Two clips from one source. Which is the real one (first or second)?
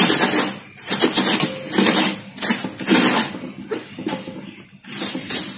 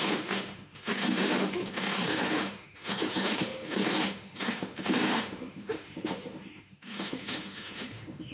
first